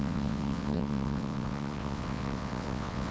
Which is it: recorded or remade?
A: remade